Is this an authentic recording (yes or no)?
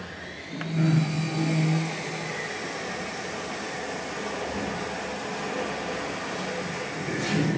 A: yes